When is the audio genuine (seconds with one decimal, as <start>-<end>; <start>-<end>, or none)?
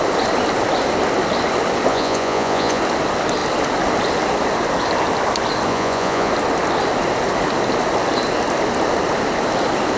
0.0-1.9; 2.8-5.7; 6.3-10.0